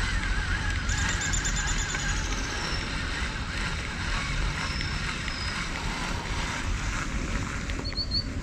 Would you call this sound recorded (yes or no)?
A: no